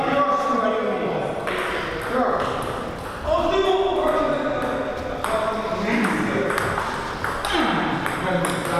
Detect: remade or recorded recorded